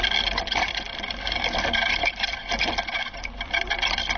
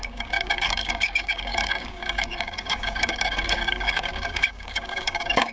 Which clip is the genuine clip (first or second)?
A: first